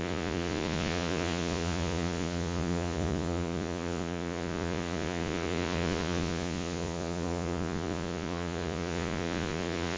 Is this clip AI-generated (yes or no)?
yes